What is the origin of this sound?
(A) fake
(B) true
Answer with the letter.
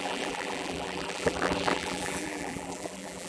A